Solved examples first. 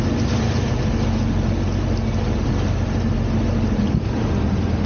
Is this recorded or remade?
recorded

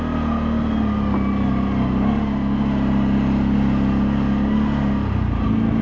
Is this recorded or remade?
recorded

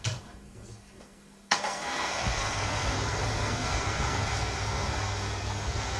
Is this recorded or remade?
remade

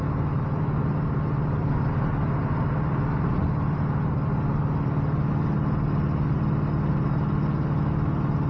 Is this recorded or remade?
recorded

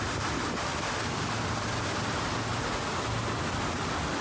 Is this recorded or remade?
recorded